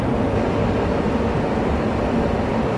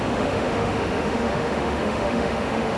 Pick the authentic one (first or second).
first